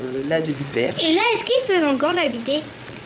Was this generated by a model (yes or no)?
yes